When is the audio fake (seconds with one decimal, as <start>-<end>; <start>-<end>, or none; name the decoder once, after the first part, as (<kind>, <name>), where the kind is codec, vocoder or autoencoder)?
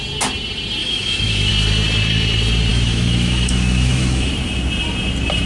0.8-1.5 (autoencoder, DAC-VAE); 2.7-4.3